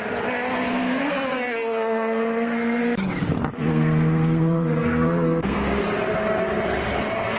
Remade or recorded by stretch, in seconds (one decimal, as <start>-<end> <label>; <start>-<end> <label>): 0.0-0.7 recorded; 0.7-2.8 remade; 2.8-3.7 recorded; 3.7-5.8 remade; 5.8-7.4 recorded